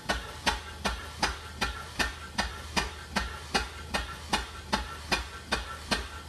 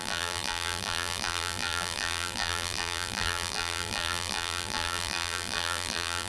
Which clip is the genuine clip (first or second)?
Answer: first